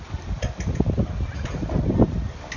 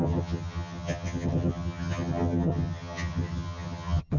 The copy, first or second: second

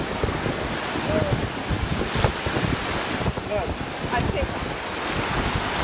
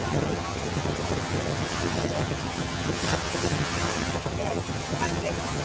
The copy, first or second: second